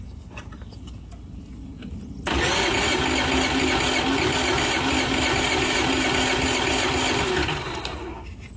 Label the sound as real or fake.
real